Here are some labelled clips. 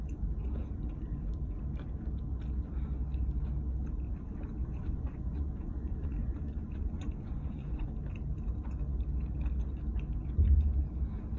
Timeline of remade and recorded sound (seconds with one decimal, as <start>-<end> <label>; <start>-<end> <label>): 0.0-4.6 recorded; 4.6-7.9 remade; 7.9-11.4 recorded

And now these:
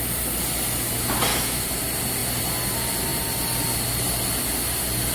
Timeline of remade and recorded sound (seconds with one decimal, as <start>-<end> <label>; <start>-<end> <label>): 0.0-1.3 recorded; 1.3-1.8 remade; 1.8-5.1 recorded

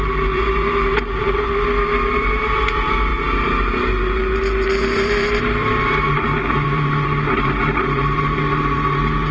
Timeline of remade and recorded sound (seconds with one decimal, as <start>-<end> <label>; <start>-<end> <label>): 0.0-9.3 remade